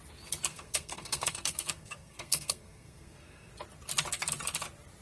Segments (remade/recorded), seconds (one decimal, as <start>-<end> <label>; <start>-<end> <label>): 0.0-0.5 recorded; 0.5-3.5 remade; 3.5-5.0 recorded